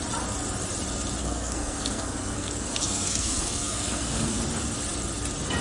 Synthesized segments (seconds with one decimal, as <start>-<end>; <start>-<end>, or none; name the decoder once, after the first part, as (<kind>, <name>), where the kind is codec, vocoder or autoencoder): 1.2-4.4 (codec, SNAC)

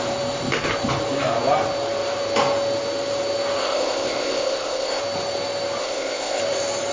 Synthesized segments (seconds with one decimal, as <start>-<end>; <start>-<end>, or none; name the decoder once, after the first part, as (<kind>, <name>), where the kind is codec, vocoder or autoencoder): 3.6-5.0 (codec, ZipCodec); 5.8-6.4

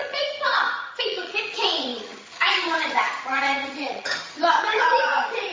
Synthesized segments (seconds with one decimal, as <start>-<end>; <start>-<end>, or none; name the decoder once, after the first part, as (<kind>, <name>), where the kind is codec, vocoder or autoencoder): 0.0-5.5 (vocoder, HiFi-GAN)

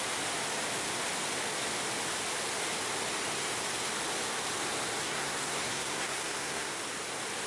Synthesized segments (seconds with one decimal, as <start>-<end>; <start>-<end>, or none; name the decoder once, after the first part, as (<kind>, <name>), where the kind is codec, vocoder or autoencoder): 5.0-6.7 (codec, SNAC)

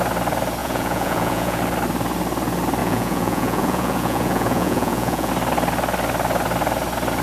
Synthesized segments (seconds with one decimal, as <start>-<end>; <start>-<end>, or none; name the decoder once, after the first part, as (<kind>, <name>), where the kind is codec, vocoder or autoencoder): 0.6-1.6 (vocoder, Vocos); 2.8-5.3

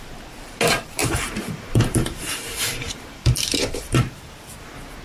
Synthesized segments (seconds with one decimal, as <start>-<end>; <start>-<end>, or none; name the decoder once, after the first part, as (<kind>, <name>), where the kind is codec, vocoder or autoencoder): 1.0-4.0 (vocoder, BigVGAN v2)

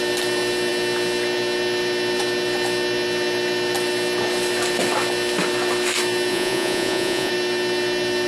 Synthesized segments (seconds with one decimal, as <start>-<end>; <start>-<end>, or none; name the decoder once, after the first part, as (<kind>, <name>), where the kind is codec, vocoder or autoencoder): 6.3-7.3 (vocoder, Vocos)